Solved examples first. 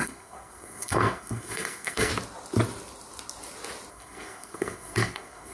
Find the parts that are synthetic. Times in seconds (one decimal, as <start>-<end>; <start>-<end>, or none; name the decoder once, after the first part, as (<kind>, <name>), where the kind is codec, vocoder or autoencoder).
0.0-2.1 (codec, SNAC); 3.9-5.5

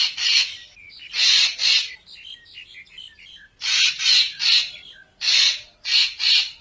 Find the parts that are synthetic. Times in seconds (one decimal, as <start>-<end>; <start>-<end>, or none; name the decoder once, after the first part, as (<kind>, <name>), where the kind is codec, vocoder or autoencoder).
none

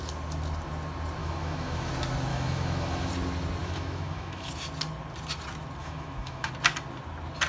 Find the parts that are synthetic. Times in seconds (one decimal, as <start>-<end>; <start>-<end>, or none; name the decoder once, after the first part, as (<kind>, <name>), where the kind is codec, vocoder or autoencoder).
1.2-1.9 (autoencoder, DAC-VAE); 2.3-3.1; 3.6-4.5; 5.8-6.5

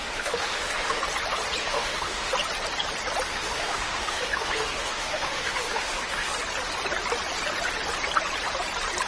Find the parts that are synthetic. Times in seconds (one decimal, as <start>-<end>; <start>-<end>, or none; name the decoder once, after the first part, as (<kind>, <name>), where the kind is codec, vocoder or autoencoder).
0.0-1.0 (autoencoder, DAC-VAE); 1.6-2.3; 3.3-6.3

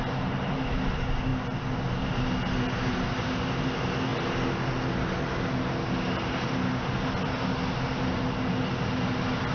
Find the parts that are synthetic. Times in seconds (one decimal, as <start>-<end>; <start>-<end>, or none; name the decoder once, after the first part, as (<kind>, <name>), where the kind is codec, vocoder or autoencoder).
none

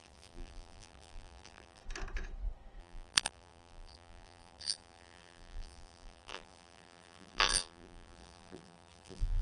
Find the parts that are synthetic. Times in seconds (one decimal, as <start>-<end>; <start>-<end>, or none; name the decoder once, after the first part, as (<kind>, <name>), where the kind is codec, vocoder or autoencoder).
0.0-1.8 (vocoder, BigVGAN v2); 2.8-9.4

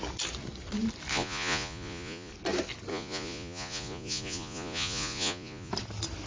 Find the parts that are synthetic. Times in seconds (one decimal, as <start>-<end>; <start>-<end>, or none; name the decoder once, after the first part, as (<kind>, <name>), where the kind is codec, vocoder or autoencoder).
1.1-2.3 (vocoder, Vocos); 2.9-5.7

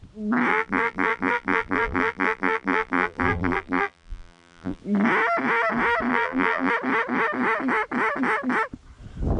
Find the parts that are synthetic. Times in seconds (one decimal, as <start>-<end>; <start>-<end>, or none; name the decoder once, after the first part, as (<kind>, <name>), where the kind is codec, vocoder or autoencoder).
0.5-4.8 (vocoder, BigVGAN v2); 6.1-6.7